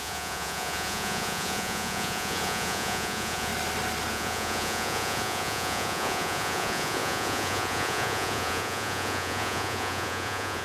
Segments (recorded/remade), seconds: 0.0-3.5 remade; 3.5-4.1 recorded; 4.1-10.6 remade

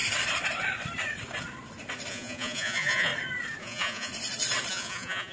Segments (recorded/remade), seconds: 0.0-2.1 recorded; 2.1-3.1 remade; 3.1-3.6 recorded; 3.6-4.1 remade; 4.1-4.7 recorded; 4.7-5.3 remade

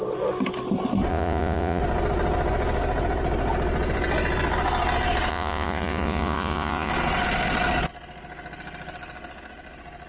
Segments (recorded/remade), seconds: 0.0-1.1 recorded; 1.1-1.8 remade; 1.8-5.3 recorded; 5.3-6.9 remade; 6.9-10.1 recorded

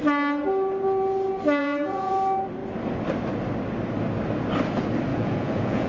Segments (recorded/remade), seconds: 0.0-1.6 recorded; 1.6-2.1 remade; 2.1-5.1 recorded; 5.1-5.9 remade

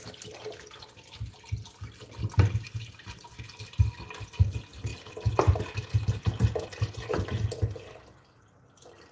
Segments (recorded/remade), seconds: 0.0-9.1 recorded